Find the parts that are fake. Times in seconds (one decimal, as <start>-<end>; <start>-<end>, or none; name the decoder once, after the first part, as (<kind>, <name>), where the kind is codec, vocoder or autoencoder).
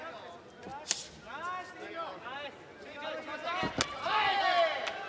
none